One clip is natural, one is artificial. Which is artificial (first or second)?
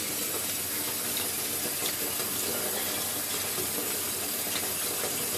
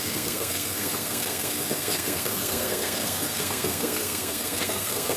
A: second